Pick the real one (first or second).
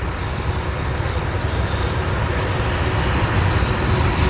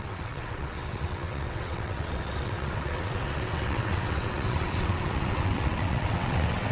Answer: first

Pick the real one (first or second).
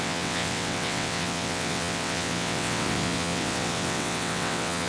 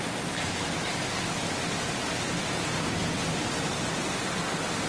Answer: second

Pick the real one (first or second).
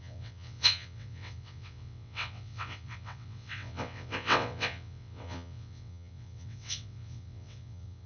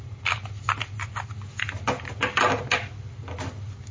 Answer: second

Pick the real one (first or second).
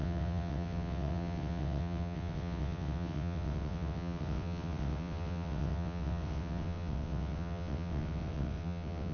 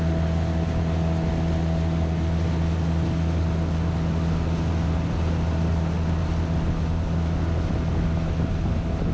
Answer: second